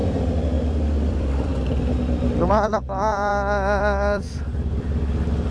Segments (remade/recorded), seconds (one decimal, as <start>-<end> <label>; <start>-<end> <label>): 0.0-1.5 remade; 1.5-2.5 recorded; 2.5-5.5 remade

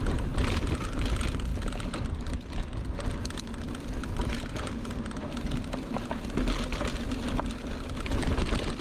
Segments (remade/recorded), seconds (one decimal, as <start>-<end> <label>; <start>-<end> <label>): 0.0-4.2 recorded; 4.2-5.9 remade; 5.9-8.8 recorded

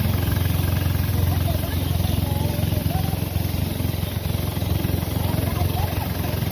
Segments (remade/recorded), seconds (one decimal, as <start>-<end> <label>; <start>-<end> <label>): 0.0-4.6 recorded; 4.6-5.2 remade; 5.2-6.5 recorded

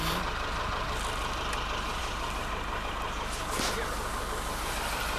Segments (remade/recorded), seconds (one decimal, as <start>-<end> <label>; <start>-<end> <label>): 0.0-2.0 remade; 2.0-4.7 recorded; 4.7-5.2 remade

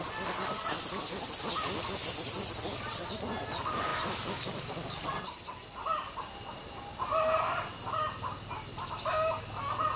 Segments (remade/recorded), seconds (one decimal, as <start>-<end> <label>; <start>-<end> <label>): 0.0-10.0 recorded